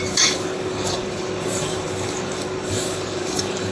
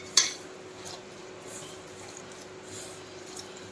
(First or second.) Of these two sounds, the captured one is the second